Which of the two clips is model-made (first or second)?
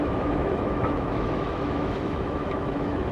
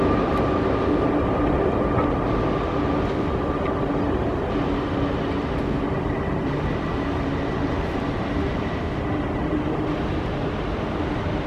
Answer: first